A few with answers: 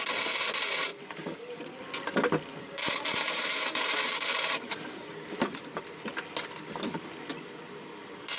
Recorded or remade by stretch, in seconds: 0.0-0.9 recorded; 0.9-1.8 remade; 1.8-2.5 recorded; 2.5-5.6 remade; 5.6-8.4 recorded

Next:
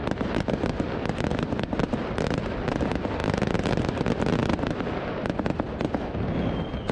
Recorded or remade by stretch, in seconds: 0.0-0.5 remade; 0.5-1.3 recorded; 1.3-2.4 remade; 2.4-3.2 recorded; 3.2-4.0 remade; 4.0-6.9 recorded

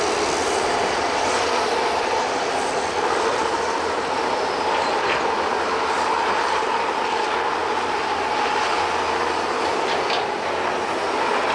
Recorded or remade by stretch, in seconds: 0.0-0.4 recorded; 0.4-2.7 remade; 2.7-3.3 recorded; 3.3-4.0 remade; 4.0-5.5 recorded; 5.5-6.7 remade; 6.7-11.5 recorded